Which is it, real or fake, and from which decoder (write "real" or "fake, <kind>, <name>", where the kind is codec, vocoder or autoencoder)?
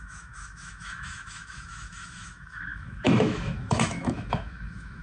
fake, autoencoder, DAC-VAE